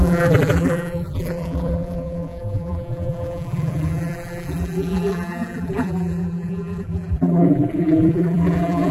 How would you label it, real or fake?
fake